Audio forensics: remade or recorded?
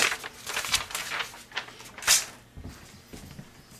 recorded